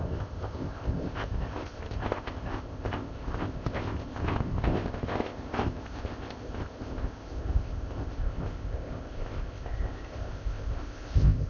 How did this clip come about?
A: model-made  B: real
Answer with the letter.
A